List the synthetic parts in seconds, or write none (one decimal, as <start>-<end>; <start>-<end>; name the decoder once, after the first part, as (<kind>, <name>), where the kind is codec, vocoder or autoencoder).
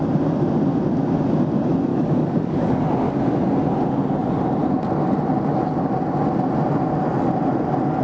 1.9-2.8 (codec, DAC)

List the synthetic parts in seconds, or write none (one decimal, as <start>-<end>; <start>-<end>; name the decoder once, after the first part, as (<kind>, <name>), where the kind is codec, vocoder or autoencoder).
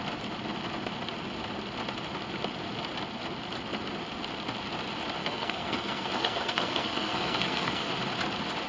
5.2-7.9 (codec, SNAC)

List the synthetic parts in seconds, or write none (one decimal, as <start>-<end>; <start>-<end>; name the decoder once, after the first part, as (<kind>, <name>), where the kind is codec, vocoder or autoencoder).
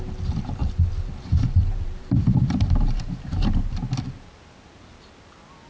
0.6-4.0 (vocoder, BigVGAN v2)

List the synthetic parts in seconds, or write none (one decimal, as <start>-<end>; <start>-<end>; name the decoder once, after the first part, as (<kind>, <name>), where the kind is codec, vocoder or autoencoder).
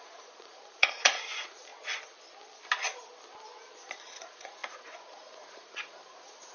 0.0-1.7 (vocoder, Vocos); 4.0-6.5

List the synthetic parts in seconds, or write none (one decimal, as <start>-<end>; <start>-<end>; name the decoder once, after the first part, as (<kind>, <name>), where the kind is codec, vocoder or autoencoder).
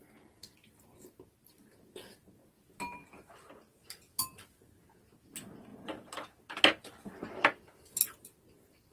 2.4-3.3 (vocoder, BigVGAN v2); 5.7-6.3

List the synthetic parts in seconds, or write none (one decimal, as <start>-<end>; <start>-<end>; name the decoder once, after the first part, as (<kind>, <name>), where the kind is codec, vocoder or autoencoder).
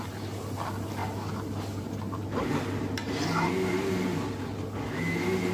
none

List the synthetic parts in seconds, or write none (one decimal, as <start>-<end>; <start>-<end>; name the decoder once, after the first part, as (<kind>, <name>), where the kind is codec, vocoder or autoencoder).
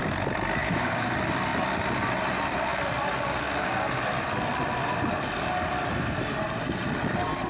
0.6-1.1 (codec, DAC)